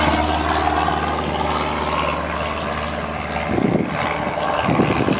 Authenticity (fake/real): real